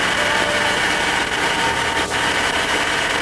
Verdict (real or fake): real